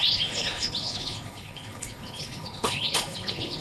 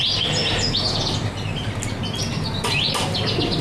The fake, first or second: first